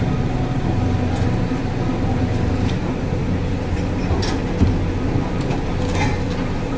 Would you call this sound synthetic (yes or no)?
no